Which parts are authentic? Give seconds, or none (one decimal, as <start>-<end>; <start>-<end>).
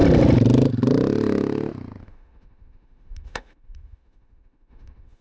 0.0-2.0